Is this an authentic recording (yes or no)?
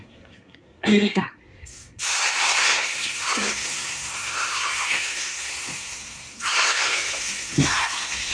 no